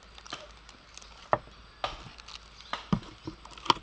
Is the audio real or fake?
real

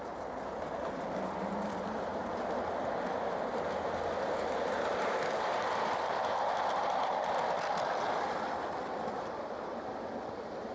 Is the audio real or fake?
real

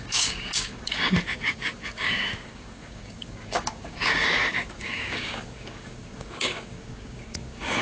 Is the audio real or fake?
fake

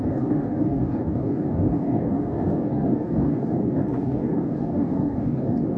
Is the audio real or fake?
fake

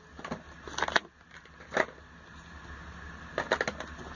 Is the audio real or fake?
real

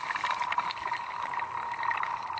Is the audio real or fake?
real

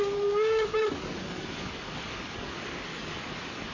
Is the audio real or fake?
fake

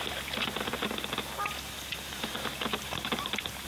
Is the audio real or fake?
real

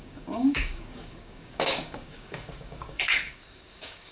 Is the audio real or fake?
fake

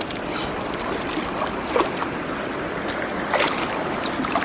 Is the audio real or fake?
real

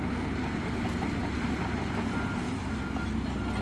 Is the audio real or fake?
real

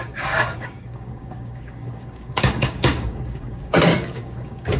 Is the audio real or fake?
fake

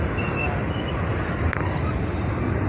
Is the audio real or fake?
real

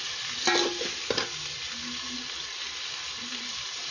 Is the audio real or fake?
real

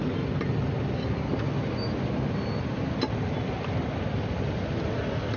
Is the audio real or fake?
real